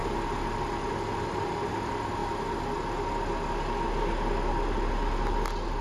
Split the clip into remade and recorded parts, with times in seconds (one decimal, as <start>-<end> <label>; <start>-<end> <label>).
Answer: 0.0-5.8 recorded